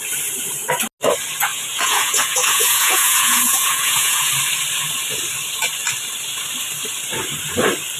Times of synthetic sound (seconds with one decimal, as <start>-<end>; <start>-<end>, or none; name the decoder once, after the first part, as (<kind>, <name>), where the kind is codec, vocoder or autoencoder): 1.5-4.3 (vocoder, Vocos)